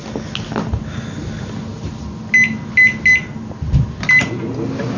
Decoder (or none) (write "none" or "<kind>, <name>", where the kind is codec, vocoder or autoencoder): none